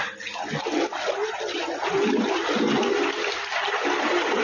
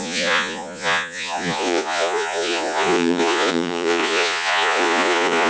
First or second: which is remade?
second